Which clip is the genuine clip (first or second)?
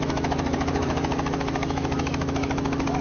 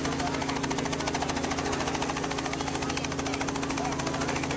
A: second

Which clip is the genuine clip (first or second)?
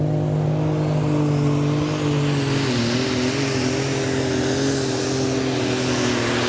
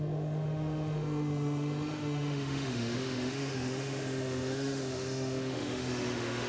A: first